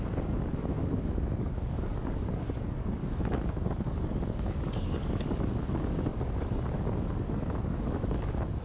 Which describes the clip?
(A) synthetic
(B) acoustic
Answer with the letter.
A